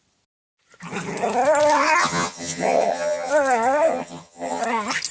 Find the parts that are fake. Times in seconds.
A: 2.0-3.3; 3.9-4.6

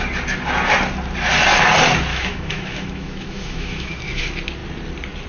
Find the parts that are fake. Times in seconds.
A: 2.1-4.0

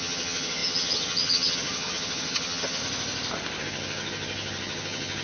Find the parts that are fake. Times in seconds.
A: 0.0-2.8; 3.6-5.2

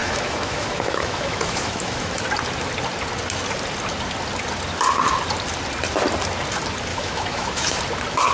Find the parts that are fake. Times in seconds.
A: 0.0-2.2; 6.9-7.8

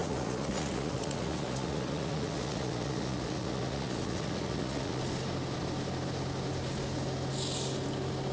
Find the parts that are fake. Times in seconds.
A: 0.0-5.0

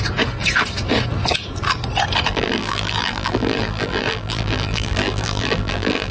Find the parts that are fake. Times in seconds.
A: 2.3-6.1

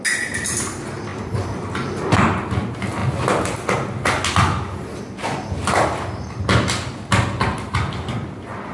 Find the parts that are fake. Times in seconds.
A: none

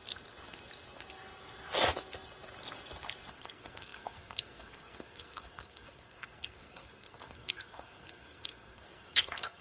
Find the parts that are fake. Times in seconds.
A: 3.3-9.6